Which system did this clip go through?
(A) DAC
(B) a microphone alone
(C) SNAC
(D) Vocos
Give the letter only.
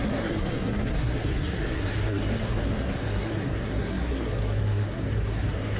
C